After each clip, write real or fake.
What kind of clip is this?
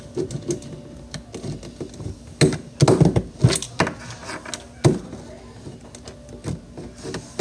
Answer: real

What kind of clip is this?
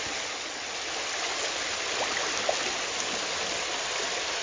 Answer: real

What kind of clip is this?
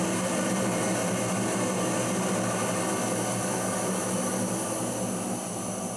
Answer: real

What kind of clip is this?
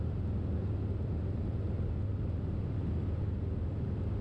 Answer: real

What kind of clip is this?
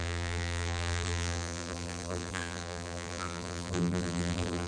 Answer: fake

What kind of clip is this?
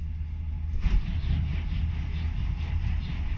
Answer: real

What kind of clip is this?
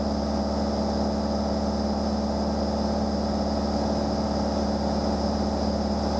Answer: real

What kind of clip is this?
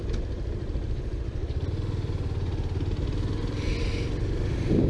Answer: real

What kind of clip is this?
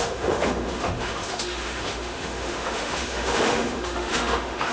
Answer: fake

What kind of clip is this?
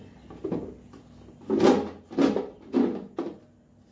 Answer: real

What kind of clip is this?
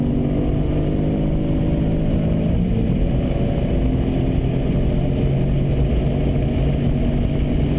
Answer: real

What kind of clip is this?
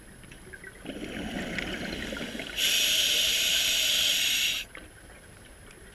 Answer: real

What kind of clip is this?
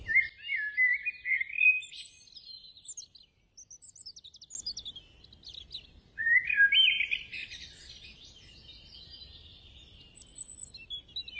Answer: real